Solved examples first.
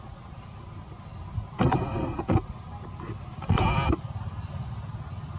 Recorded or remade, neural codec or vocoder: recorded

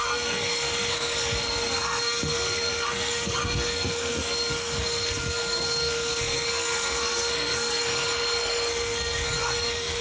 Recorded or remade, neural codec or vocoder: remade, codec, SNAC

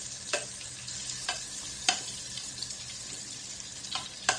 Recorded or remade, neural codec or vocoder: recorded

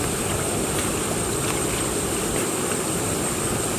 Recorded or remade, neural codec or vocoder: recorded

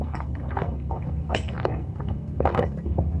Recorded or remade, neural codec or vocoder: remade, codec, SNAC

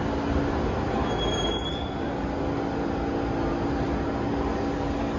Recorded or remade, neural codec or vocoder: recorded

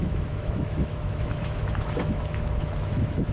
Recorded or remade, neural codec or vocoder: remade, autoencoder, DAC-VAE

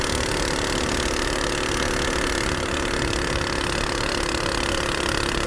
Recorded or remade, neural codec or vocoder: recorded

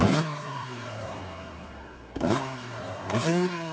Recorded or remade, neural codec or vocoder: remade, codec, SNAC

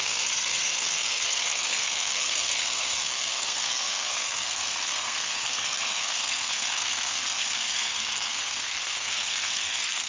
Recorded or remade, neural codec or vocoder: remade, codec, SNAC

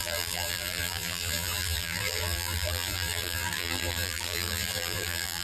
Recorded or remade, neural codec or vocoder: remade, vocoder, BigVGAN v2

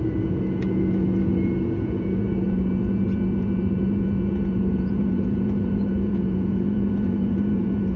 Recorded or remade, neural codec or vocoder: remade, vocoder, Vocos